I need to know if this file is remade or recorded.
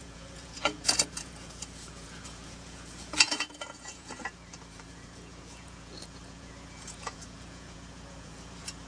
remade